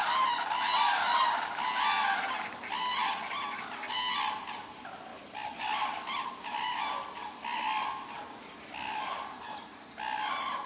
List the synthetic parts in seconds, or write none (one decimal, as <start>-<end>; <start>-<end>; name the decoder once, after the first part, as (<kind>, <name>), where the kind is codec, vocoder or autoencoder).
none